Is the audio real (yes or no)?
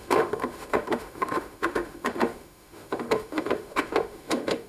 no